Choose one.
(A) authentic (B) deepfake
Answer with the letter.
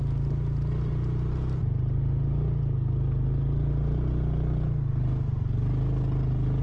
A